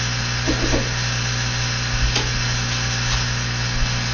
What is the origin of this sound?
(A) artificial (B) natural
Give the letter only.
B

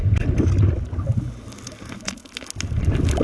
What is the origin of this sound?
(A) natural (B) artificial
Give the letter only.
A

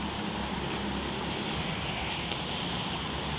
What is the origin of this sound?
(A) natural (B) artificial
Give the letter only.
A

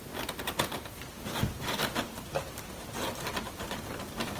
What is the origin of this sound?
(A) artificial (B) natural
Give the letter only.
B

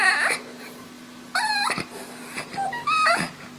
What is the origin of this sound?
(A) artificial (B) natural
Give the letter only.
B